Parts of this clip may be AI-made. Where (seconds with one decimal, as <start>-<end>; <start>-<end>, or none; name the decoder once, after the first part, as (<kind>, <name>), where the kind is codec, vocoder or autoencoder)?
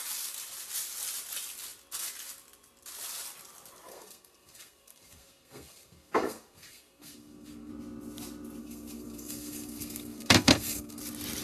3.9-7.7 (codec, SNAC); 8.6-11.0